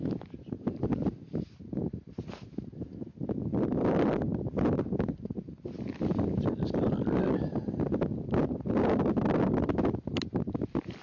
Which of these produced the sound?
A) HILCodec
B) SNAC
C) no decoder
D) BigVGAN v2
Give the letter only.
C